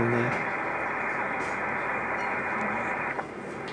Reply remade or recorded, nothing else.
recorded